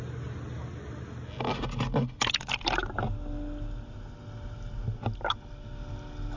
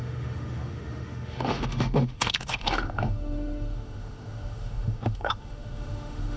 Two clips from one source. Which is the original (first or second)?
first